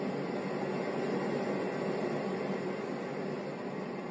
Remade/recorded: recorded